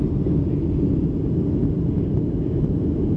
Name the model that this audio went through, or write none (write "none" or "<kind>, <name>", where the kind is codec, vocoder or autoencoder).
none